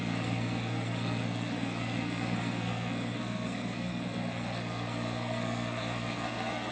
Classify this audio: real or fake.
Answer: fake